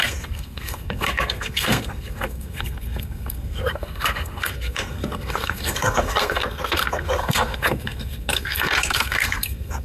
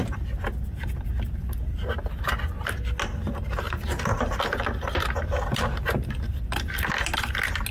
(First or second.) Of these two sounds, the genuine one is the second